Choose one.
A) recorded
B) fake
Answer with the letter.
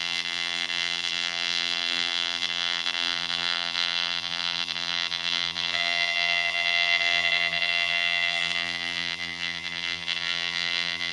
B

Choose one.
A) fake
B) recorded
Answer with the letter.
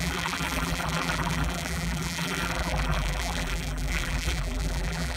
A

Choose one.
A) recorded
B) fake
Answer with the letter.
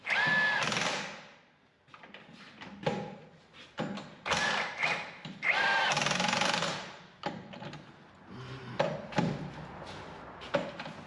A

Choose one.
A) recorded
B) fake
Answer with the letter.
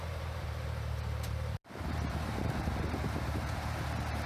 B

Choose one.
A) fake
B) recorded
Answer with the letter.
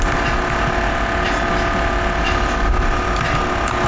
B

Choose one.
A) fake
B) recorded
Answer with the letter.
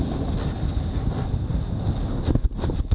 B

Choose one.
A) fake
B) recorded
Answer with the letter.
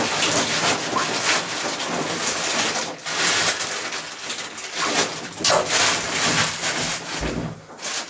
B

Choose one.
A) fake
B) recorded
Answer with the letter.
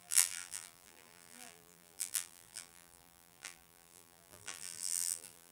A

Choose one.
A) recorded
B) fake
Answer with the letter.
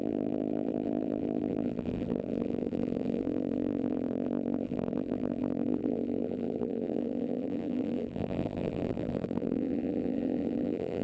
B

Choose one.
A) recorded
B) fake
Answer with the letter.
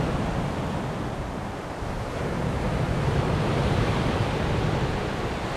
A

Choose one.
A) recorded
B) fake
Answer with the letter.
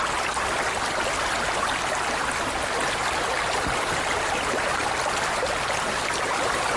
A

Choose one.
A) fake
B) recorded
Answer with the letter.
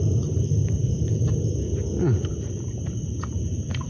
A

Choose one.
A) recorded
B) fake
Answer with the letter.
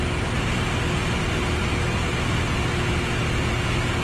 A